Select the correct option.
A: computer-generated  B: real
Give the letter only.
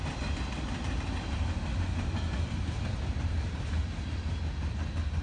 B